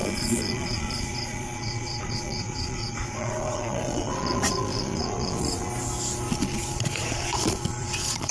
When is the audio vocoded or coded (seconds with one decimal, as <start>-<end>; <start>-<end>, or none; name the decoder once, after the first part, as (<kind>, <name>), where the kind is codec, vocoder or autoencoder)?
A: 0.0-5.7 (vocoder, Vocos); 6.3-8.3